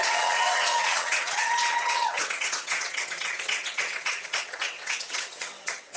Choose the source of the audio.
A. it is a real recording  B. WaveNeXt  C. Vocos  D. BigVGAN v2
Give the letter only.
B